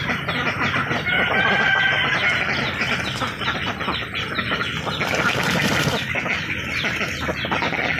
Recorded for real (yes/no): yes